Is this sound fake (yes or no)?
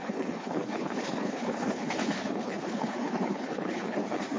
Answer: yes